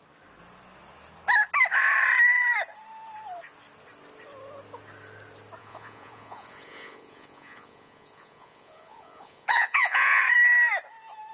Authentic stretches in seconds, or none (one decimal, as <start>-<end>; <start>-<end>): 0.0-5.6; 10.2-11.3